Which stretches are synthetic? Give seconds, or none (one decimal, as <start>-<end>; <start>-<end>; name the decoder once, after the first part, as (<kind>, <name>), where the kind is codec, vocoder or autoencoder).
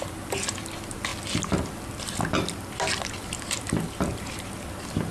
none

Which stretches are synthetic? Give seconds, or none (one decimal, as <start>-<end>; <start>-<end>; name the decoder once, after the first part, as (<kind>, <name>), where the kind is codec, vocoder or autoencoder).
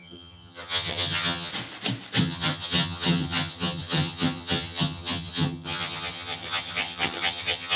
0.0-1.5 (vocoder, HiFi-GAN); 2.2-7.8